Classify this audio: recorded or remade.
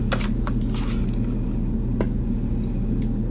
recorded